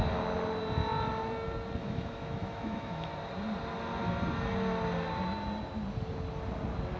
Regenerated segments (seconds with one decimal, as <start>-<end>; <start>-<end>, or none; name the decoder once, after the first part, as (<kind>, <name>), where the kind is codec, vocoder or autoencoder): 1.8-3.1 (autoencoder, DAC-VAE)